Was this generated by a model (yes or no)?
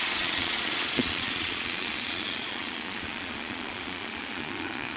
yes